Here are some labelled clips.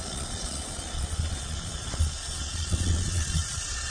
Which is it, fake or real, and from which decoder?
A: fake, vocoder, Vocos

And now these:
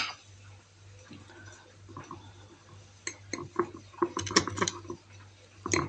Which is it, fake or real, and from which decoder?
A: real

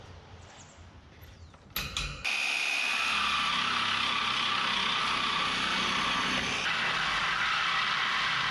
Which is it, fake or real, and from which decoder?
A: real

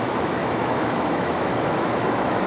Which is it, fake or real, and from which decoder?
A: fake, autoencoder, DAC-VAE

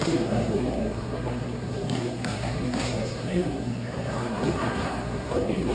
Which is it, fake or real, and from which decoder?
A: fake, codec, SNAC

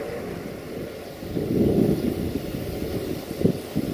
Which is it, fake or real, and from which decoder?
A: real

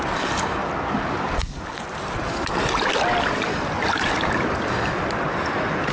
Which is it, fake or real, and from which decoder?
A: real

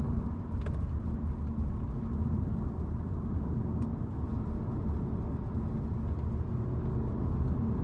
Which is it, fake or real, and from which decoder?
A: real